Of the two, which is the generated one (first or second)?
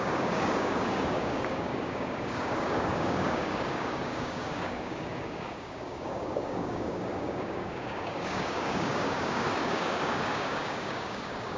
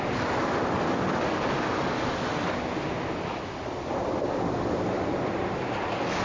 first